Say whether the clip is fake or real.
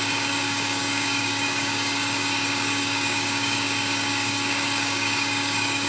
fake